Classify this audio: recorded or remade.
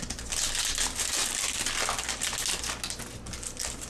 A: recorded